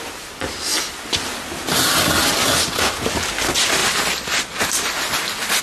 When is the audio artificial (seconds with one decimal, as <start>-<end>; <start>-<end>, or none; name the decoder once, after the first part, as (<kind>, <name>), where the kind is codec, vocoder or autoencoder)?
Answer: 3.8-5.6 (vocoder, BigVGAN v2)